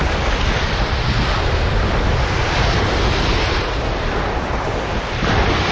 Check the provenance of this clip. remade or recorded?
recorded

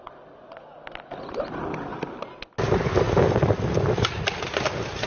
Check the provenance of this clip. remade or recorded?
recorded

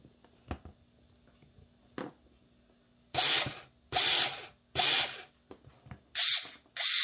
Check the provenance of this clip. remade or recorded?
recorded